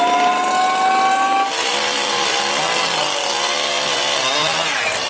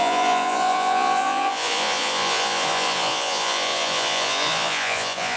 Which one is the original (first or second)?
first